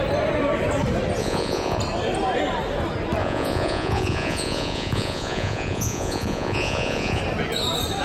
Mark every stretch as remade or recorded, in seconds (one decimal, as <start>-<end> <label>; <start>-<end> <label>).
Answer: 0.0-1.2 recorded; 1.2-1.8 remade; 1.8-3.2 recorded; 3.2-7.2 remade; 7.2-8.0 recorded